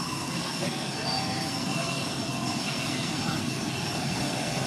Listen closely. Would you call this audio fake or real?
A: fake